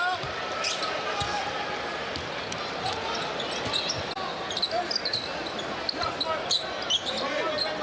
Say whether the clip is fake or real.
real